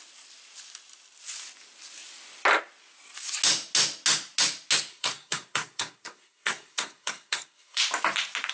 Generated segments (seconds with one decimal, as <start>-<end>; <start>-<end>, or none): 4.9-7.8